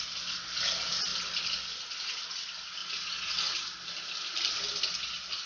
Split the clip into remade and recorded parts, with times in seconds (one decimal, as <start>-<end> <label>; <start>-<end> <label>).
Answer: 0.0-5.5 recorded